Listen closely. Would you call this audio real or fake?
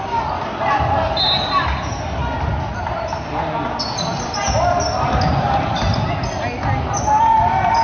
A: real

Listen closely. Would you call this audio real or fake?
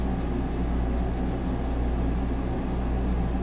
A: real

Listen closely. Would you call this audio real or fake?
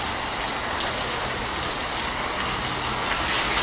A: real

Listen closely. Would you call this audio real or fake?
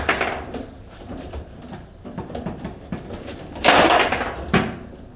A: real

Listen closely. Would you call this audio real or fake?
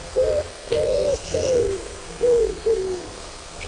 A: fake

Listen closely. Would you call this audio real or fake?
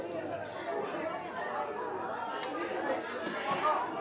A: real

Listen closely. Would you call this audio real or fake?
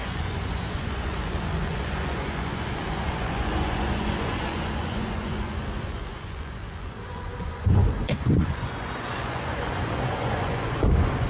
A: fake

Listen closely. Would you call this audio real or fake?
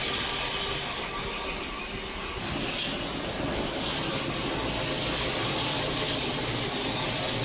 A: real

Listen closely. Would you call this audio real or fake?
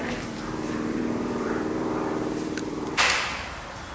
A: fake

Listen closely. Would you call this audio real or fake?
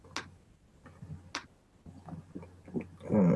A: real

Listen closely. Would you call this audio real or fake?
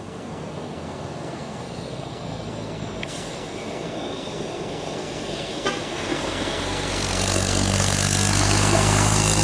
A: fake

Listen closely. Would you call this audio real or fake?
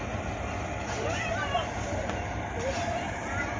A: real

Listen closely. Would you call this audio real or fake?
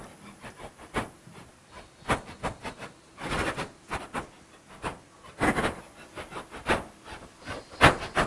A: real